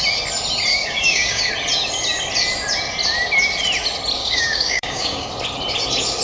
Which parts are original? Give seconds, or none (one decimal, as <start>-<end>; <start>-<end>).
0.0-0.7; 1.5-4.2; 5.3-6.2